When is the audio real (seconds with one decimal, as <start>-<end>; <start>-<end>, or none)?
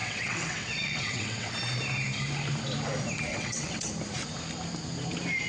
1.5-3.3; 3.9-5.5